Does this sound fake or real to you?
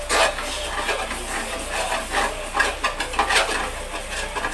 real